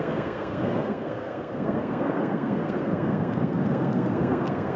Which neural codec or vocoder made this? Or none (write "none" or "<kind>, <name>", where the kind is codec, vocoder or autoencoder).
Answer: codec, SNAC